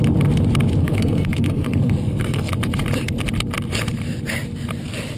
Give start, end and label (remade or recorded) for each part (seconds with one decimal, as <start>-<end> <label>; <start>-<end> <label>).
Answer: 0.0-0.8 recorded; 0.8-2.5 remade; 2.5-5.2 recorded